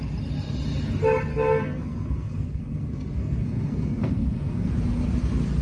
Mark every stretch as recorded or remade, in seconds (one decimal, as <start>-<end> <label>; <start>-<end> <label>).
0.0-1.3 recorded; 1.3-4.7 remade; 4.7-5.6 recorded